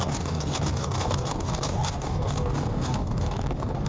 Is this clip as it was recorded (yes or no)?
no